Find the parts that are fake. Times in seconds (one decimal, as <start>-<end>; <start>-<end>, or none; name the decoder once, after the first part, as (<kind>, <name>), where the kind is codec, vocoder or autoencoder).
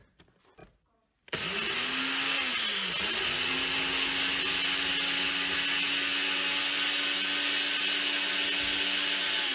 none